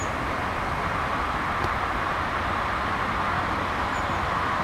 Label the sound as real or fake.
real